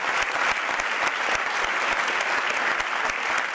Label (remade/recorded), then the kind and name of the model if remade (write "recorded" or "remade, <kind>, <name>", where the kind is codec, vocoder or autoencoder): recorded